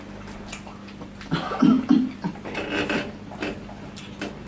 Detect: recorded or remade recorded